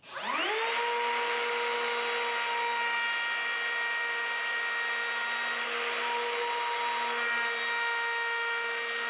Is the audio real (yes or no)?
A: yes